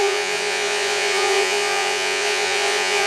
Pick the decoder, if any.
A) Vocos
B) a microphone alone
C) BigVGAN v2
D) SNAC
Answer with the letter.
A